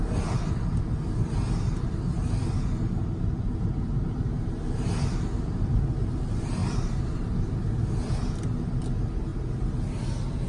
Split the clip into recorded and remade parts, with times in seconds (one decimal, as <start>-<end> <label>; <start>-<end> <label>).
0.0-10.5 recorded

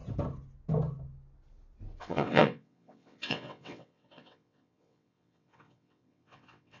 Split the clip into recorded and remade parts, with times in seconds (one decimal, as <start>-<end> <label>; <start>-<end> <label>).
0.0-2.0 recorded; 2.0-6.8 remade

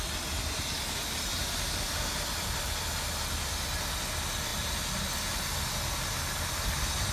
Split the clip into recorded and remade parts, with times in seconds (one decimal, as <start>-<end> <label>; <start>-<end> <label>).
0.0-1.3 recorded; 1.3-2.6 remade; 2.6-7.1 recorded